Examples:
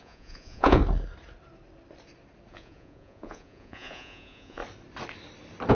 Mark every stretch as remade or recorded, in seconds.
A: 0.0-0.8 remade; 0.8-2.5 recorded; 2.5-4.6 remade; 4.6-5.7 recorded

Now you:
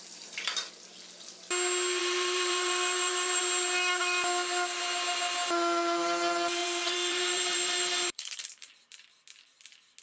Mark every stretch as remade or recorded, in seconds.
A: 0.0-2.0 recorded; 2.0-3.4 remade; 3.4-6.6 recorded; 6.6-8.7 remade; 8.7-10.0 recorded